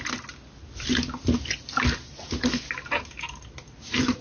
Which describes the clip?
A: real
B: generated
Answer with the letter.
A